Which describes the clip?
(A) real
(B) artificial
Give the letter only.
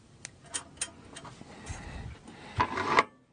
A